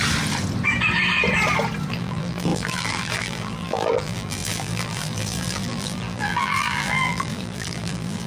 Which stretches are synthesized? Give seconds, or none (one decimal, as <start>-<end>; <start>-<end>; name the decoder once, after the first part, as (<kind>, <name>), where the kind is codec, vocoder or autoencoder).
1.9-8.3 (vocoder, BigVGAN v2)